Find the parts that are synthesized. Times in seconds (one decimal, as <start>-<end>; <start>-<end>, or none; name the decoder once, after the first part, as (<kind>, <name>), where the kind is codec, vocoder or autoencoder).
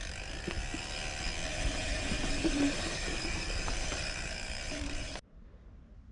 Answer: 1.5-5.2 (vocoder, BigVGAN v2)